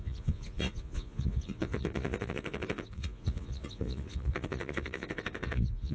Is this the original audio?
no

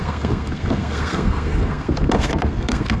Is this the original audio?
no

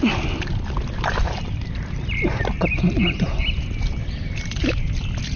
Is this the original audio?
yes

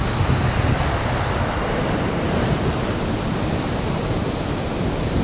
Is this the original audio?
yes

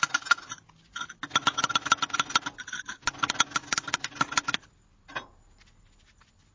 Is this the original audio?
yes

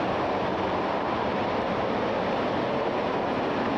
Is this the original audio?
yes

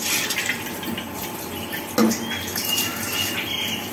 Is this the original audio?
yes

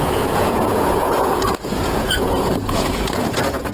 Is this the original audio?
no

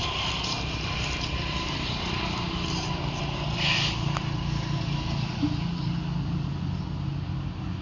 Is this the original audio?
yes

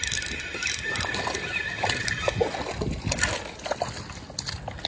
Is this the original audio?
yes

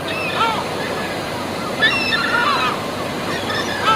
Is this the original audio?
yes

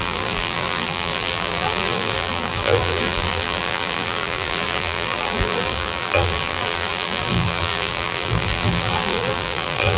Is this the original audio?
no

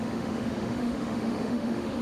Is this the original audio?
no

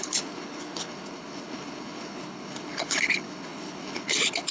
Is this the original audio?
no